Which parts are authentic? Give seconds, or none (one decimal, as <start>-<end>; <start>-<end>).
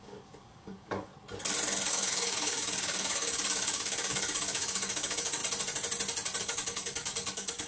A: 1.1-1.9; 5.4-6.4